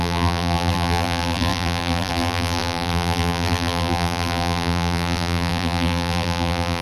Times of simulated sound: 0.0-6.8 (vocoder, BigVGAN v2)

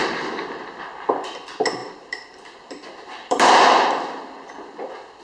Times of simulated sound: 0.0-0.8 (vocoder, BigVGAN v2); 1.8-5.2

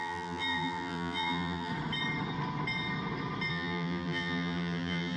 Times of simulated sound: 0.0-1.7 (vocoder, BigVGAN v2); 3.5-5.2

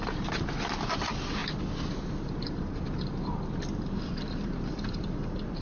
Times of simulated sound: 0.0-5.6 (vocoder, BigVGAN v2)

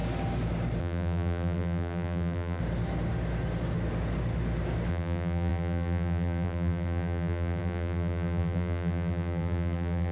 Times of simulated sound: 0.8-2.6 (vocoder, BigVGAN v2); 4.9-10.1

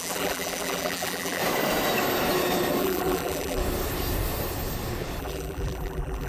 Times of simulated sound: 0.0-1.4 (vocoder, BigVGAN v2); 2.8-3.6; 5.2-6.3